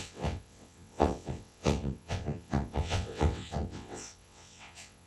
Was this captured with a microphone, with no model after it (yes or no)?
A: no